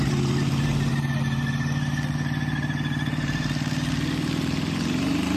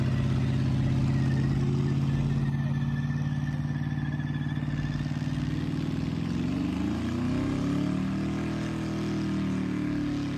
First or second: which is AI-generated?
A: first